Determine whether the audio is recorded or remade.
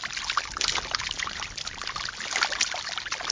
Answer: recorded